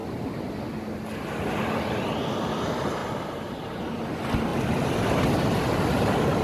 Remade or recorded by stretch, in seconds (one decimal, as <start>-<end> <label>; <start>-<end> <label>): 0.0-3.0 recorded; 3.0-4.0 remade; 4.0-6.4 recorded

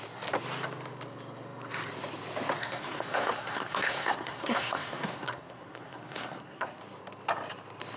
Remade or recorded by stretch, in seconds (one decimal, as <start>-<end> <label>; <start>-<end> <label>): 0.0-2.6 recorded; 2.6-6.8 remade; 6.8-8.0 recorded

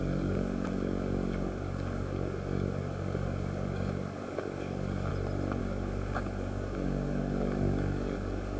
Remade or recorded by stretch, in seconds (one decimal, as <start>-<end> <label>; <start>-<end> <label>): 0.0-5.1 remade; 5.1-5.6 recorded; 5.6-8.6 remade

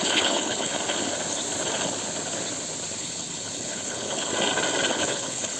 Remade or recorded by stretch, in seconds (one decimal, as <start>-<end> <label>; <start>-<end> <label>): 0.0-0.7 remade; 0.7-3.0 recorded; 3.0-4.3 remade; 4.3-4.9 recorded; 4.9-5.6 remade

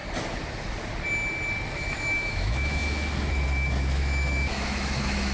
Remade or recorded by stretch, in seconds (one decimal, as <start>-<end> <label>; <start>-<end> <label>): 0.0-1.7 recorded; 1.7-5.3 remade

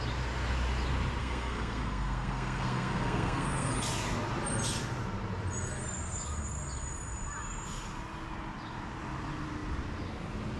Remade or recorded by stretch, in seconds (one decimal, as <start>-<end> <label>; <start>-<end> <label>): 0.0-1.2 recorded; 1.2-3.7 remade; 3.7-10.6 recorded

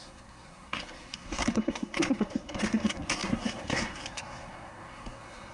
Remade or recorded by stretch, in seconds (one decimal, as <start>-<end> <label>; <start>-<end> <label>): 0.0-5.5 remade